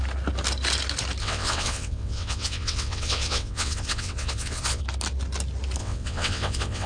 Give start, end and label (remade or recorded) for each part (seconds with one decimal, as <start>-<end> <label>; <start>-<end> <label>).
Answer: 0.0-1.2 recorded; 1.2-4.8 remade; 4.8-5.8 recorded; 5.8-6.9 remade